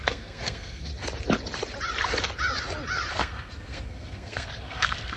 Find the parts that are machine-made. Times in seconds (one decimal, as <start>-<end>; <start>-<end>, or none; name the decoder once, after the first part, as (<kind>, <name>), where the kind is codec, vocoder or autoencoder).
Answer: 0.0-0.9 (codec, SNAC); 3.1-5.2